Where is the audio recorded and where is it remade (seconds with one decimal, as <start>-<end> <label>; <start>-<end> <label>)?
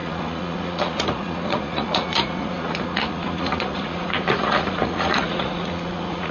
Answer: 0.0-6.3 remade